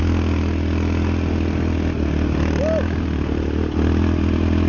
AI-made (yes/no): no